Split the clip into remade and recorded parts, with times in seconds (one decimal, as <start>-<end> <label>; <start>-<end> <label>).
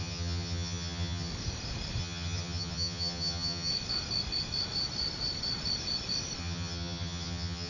0.0-1.3 remade; 1.3-2.0 recorded; 2.0-3.7 remade; 3.7-6.4 recorded; 6.4-7.7 remade